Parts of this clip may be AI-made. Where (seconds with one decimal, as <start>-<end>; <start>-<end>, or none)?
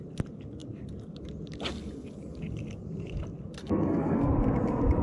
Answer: 3.6-4.3